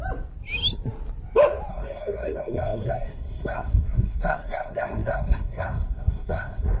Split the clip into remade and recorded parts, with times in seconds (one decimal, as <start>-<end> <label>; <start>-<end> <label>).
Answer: 0.0-1.7 recorded; 1.7-6.8 remade